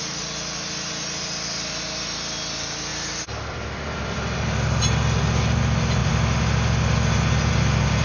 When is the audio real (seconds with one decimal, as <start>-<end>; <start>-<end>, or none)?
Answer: 0.0-2.9; 3.8-8.0